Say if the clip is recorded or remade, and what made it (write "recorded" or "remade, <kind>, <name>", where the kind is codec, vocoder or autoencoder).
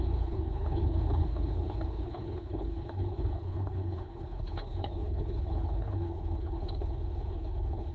remade, codec, HILCodec